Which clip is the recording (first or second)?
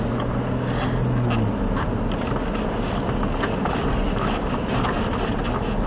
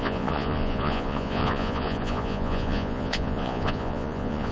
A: first